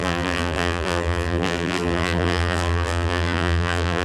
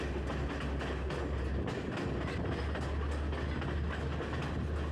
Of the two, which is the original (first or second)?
second